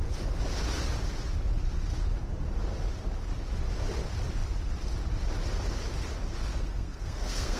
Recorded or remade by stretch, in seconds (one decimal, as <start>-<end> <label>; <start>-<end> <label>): 0.0-6.5 recorded; 6.5-7.6 remade